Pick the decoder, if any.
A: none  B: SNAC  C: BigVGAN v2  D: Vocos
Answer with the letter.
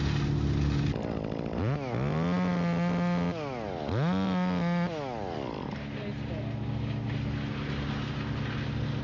A